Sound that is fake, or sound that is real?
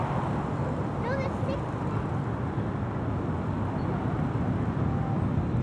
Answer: real